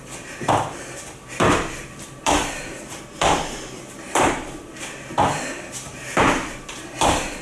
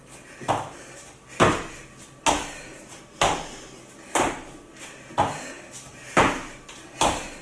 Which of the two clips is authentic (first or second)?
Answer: second